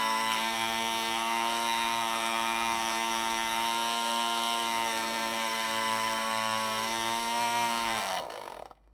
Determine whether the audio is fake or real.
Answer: fake